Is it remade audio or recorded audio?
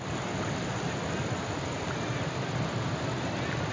recorded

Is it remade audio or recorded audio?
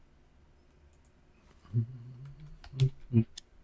recorded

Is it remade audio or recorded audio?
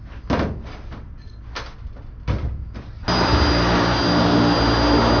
recorded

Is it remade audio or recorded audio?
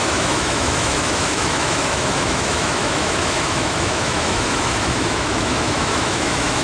remade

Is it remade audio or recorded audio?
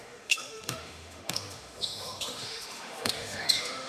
remade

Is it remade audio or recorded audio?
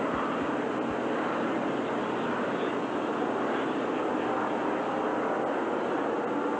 recorded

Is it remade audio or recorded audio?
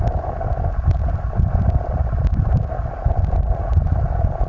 recorded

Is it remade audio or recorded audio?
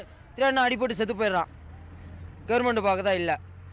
recorded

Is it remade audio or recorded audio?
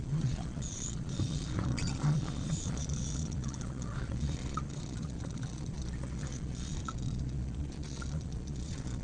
remade